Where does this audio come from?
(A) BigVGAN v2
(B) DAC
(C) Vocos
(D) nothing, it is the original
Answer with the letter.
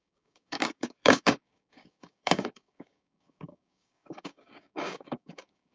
B